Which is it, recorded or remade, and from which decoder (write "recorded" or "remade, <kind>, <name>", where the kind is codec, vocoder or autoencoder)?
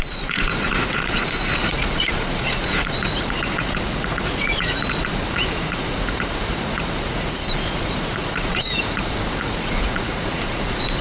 remade, vocoder, Vocos